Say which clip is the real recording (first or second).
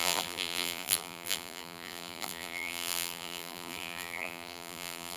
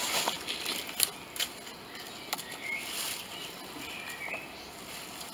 second